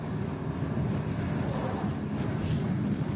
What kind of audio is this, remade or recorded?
recorded